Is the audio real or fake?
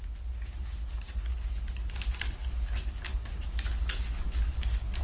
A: real